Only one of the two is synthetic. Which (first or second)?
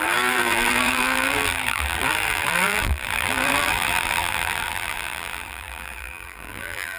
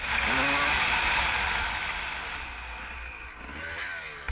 first